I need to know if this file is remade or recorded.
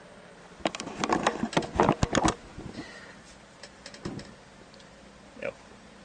recorded